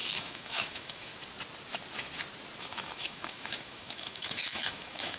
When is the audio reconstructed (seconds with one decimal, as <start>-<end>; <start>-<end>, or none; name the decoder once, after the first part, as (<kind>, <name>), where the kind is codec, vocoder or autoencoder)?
0.0-1.1 (autoencoder, DAC-VAE); 2.6-5.2

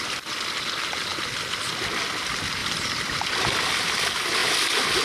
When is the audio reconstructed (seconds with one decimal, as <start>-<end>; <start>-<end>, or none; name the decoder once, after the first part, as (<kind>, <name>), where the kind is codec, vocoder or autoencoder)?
2.6-4.0 (vocoder, BigVGAN v2)

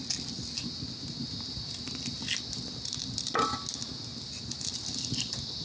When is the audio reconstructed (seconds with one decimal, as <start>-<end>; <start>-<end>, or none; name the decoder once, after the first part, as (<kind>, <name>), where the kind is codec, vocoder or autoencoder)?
none

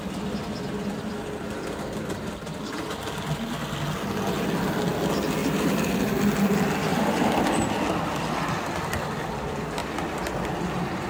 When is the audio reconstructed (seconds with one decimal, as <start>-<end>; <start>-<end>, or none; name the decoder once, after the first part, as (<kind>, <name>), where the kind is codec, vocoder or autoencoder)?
5.4-6.0 (vocoder, BigVGAN v2); 6.9-7.8

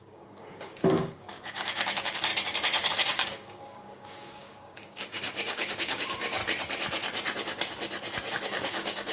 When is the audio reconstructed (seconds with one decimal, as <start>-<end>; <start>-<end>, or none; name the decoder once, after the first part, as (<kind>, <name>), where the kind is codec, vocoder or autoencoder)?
0.0-2.3 (codec, DAC); 2.9-6.4; 8.3-9.1

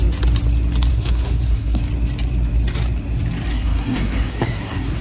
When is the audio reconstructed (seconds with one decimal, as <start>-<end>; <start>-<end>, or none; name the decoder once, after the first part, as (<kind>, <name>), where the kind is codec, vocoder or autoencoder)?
0.9-1.8 (codec, SNAC); 3.5-5.0